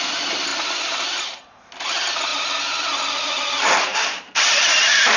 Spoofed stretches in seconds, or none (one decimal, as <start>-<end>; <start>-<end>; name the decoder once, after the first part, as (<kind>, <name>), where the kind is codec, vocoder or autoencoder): 0.5-1.7 (vocoder, BigVGAN v2); 3.9-4.6